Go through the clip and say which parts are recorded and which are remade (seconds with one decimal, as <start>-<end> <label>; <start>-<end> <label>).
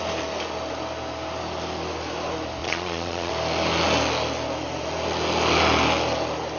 0.0-2.6 recorded; 2.6-3.3 remade; 3.3-6.6 recorded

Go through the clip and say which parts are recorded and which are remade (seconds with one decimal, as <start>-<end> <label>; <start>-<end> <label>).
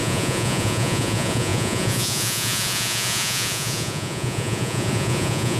0.0-5.6 remade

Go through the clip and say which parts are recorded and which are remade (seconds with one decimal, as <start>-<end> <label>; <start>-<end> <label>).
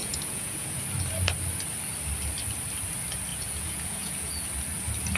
0.0-0.8 remade; 0.8-3.3 recorded; 3.3-4.3 remade; 4.3-5.2 recorded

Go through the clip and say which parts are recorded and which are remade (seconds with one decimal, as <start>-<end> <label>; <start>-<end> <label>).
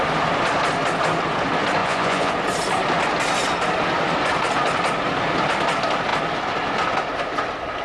0.0-1.8 recorded; 1.8-2.3 remade; 2.3-7.8 recorded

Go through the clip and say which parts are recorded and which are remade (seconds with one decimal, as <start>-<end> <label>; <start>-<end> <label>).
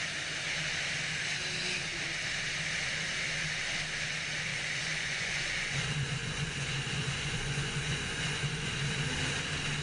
0.0-4.5 recorded; 4.5-8.7 remade; 8.7-9.8 recorded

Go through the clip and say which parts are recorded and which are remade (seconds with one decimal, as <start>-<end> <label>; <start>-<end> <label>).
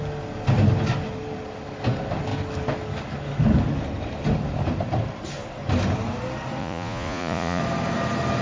0.0-6.6 recorded; 6.6-7.6 remade; 7.6-8.4 recorded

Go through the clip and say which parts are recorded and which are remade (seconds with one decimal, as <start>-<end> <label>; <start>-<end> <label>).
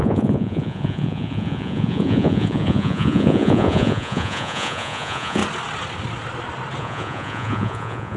0.0-5.4 remade; 5.4-6.8 recorded; 6.8-8.2 remade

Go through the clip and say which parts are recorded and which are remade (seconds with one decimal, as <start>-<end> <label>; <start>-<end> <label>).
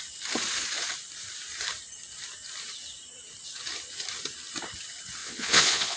0.0-5.2 recorded; 5.2-6.0 remade